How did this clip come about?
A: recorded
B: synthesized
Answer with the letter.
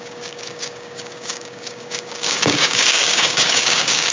B